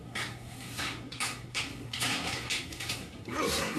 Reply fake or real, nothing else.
fake